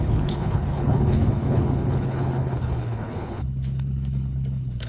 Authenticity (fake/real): fake